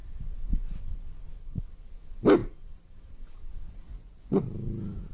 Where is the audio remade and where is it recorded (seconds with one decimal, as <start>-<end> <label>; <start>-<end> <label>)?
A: 0.0-3.9 recorded; 3.9-4.4 remade; 4.4-5.1 recorded

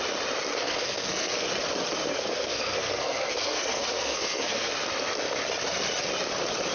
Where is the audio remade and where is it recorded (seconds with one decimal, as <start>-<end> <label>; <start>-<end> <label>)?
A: 0.0-0.5 recorded; 0.5-1.5 remade; 1.5-2.1 recorded; 2.1-4.7 remade; 4.7-6.7 recorded

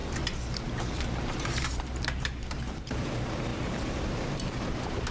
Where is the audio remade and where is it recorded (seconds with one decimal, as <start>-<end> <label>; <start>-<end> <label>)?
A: 0.0-5.1 remade

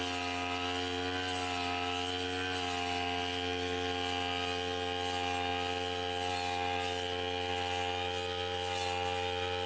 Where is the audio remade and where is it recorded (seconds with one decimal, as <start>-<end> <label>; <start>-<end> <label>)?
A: 0.0-9.7 recorded